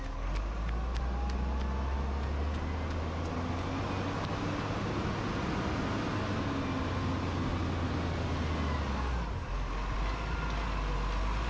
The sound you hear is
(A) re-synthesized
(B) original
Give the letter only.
B